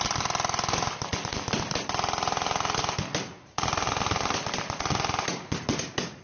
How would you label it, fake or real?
real